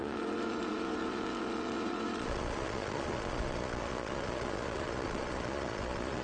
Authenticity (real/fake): fake